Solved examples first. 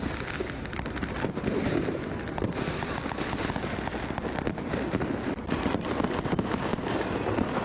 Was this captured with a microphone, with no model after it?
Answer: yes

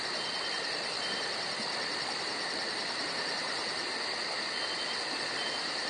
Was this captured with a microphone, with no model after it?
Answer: yes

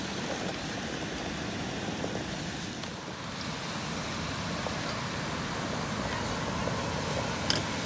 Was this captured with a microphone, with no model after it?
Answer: yes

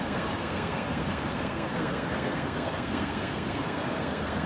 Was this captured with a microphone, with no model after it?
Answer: no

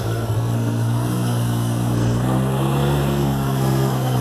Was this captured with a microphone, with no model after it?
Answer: no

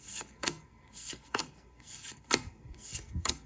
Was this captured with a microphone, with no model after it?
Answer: no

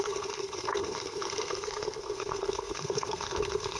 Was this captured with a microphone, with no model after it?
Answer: no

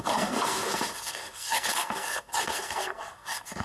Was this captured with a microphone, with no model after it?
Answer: no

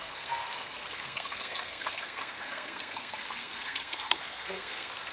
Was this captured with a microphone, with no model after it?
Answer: no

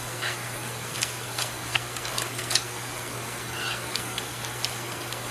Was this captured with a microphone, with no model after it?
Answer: no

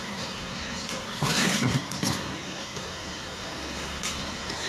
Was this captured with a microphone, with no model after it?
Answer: no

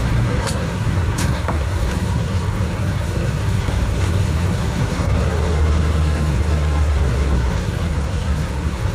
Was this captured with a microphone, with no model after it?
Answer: no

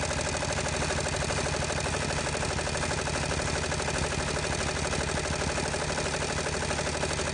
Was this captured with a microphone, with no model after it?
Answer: yes